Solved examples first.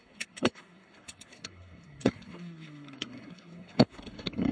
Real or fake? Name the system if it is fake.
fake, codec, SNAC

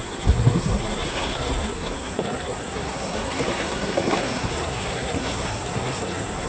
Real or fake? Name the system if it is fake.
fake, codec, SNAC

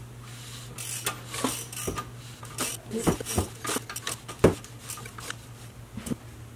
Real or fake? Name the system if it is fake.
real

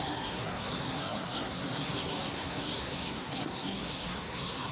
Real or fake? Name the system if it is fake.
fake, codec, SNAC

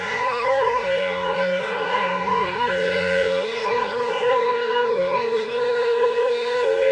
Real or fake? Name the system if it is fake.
fake, codec, SNAC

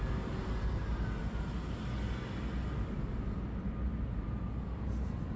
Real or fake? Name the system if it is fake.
real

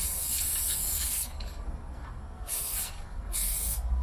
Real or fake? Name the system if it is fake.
fake, codec, SNAC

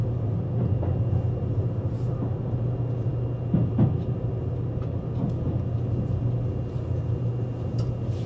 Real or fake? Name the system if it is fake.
real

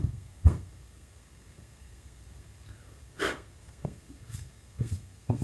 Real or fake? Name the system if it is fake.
fake, codec, SNAC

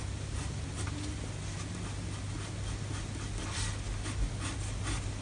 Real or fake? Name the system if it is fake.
real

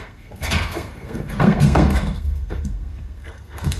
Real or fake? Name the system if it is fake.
fake, codec, SNAC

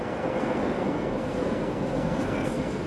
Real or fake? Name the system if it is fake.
fake, codec, SNAC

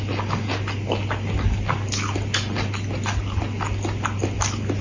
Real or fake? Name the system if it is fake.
real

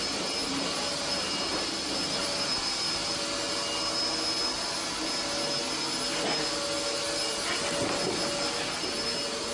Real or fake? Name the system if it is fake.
real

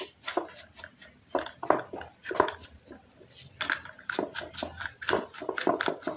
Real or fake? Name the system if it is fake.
real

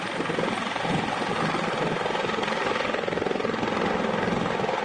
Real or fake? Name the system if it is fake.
real